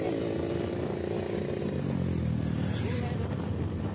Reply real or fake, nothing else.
real